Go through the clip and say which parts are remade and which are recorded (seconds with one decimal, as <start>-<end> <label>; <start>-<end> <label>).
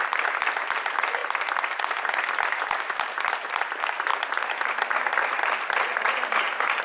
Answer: 0.0-6.8 recorded